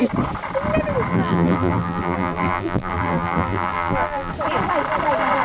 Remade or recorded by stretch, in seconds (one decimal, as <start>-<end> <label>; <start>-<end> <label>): 0.0-1.1 recorded; 1.1-4.3 remade; 4.3-5.4 recorded